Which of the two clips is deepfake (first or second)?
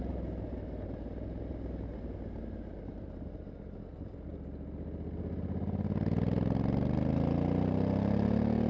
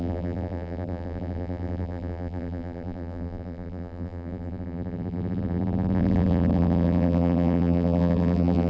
second